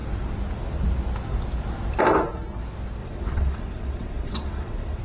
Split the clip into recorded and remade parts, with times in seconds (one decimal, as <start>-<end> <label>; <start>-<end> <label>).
0.0-3.0 recorded; 3.0-5.0 remade